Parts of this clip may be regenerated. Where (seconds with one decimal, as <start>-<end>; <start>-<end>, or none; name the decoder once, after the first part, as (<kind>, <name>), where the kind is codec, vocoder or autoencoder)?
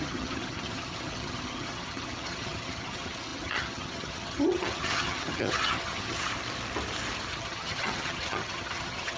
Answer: 0.0-6.3 (vocoder, HiFi-GAN); 7.3-9.2